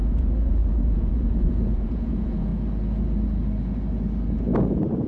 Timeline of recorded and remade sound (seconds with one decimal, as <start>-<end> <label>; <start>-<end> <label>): 0.0-2.5 remade; 2.5-5.1 recorded